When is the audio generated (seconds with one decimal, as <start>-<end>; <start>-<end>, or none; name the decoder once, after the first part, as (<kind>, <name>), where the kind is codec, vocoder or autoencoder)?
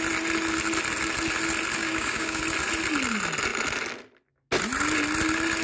1.8-2.4 (codec, DAC)